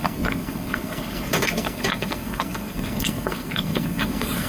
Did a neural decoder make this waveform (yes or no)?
yes